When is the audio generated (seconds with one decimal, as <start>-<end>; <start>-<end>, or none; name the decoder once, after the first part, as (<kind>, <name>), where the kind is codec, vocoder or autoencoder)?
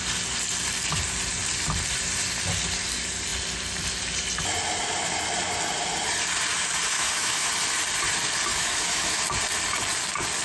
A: 6.9-7.5 (autoencoder, DAC-VAE); 8.5-9.2